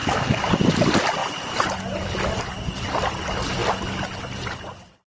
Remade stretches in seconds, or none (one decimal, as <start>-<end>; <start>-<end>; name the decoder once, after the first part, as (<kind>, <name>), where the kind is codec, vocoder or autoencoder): none